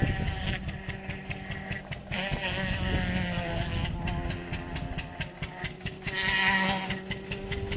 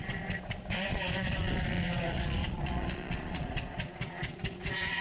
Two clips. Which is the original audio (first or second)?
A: first